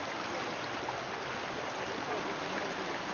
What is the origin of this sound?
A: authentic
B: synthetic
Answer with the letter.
A